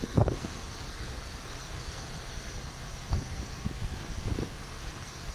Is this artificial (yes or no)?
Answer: yes